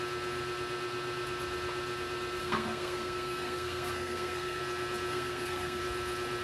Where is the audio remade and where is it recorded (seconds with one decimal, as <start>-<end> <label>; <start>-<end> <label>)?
0.0-2.4 recorded; 2.4-4.6 remade; 4.6-5.1 recorded; 5.1-5.8 remade; 5.8-6.4 recorded